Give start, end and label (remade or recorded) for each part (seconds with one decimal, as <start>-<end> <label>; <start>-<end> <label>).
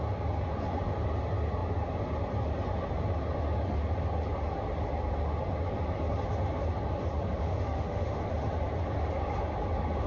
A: 0.0-7.4 recorded; 7.4-8.2 remade; 8.2-10.1 recorded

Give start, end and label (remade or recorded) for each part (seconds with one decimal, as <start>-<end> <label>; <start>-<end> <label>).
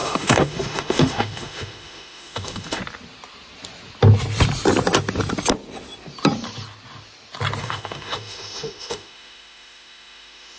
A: 0.0-2.8 remade; 2.8-7.6 recorded; 7.6-10.6 remade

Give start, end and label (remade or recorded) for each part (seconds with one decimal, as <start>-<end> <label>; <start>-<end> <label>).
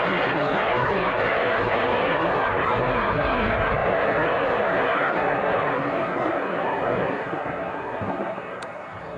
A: 0.0-9.2 remade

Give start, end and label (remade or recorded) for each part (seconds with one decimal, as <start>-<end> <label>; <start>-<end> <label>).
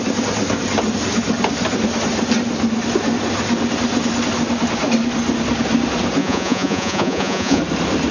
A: 0.0-6.2 recorded; 6.2-7.6 remade; 7.6-8.1 recorded